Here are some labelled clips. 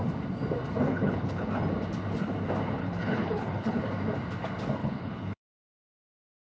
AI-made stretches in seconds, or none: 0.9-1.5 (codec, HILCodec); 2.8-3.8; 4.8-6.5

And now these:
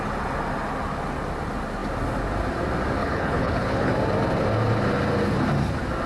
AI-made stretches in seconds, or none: 3.0-3.9 (codec, HILCodec)

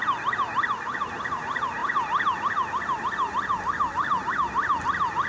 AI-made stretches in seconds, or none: none